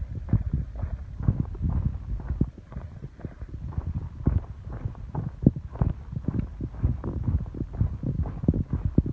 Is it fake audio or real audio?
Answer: real